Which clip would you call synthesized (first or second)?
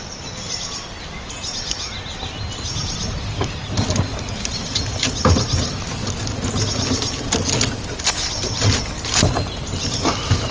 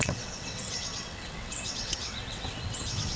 second